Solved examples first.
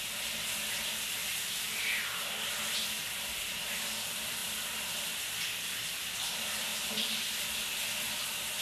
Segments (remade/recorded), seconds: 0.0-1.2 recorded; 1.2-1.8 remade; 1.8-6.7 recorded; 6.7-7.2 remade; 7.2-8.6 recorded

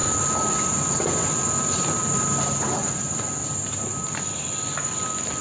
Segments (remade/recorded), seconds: 0.0-3.2 remade; 3.2-5.4 recorded